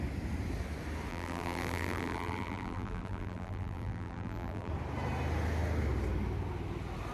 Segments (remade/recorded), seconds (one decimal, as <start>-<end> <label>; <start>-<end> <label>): 0.0-1.1 recorded; 1.1-4.7 remade; 4.7-7.1 recorded